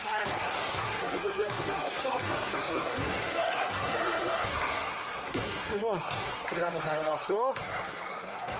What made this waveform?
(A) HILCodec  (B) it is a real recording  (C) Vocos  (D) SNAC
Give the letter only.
D